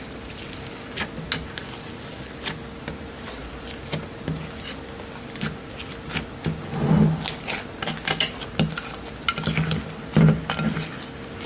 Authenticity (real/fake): real